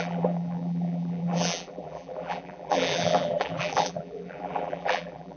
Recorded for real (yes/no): no